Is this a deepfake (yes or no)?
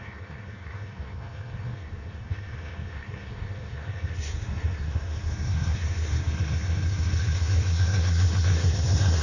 yes